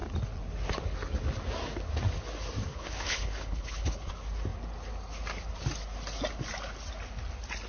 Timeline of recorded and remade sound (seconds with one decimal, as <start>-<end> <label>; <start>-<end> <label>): 0.0-2.7 recorded; 2.7-4.1 remade; 4.1-7.7 recorded